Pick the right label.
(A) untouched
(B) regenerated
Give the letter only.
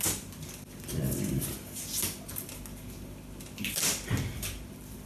A